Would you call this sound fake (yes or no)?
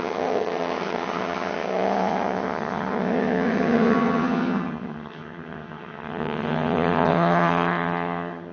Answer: yes